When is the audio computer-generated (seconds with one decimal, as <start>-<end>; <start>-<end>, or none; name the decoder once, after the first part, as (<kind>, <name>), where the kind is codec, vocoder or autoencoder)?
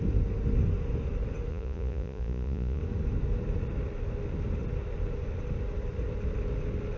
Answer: 1.5-2.8 (vocoder, Vocos)